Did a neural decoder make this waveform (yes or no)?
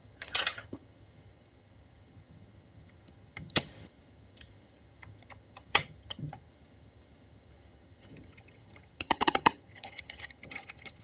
yes